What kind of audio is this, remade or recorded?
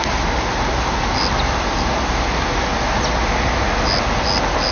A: recorded